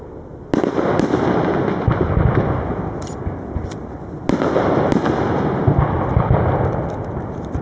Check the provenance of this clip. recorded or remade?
recorded